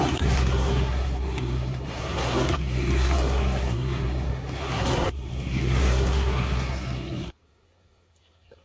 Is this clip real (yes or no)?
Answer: no